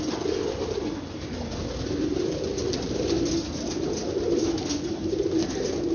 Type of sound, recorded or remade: recorded